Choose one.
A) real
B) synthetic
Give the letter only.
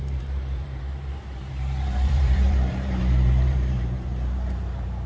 B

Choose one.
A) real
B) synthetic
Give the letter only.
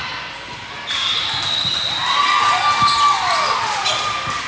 A